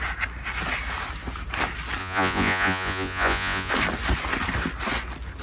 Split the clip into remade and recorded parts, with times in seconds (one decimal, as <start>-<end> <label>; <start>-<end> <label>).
0.0-2.0 recorded; 2.0-3.7 remade; 3.7-5.4 recorded